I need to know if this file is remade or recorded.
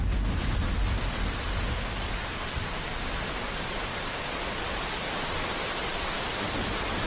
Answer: recorded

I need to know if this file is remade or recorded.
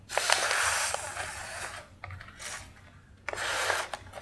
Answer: recorded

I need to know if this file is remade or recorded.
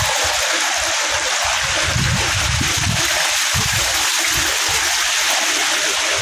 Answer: recorded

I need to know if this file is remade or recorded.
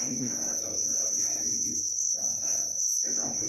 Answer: remade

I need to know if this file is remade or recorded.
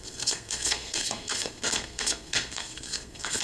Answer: remade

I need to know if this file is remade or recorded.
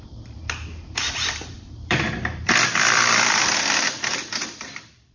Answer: remade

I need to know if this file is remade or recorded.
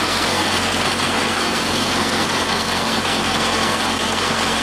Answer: remade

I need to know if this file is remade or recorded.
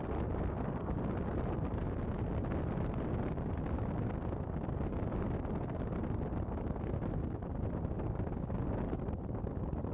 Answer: recorded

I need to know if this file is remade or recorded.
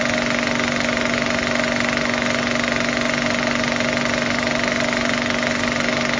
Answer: recorded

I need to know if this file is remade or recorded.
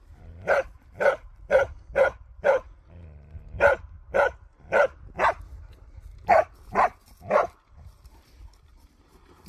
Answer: recorded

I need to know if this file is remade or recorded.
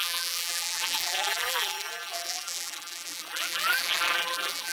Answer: remade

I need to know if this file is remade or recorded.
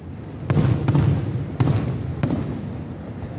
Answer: recorded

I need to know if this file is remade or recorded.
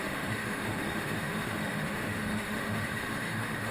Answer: remade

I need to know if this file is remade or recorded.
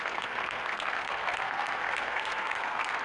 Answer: remade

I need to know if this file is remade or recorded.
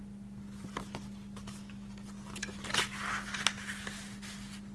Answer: recorded